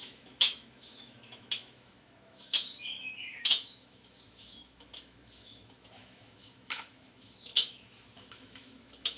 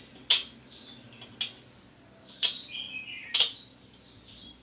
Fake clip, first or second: first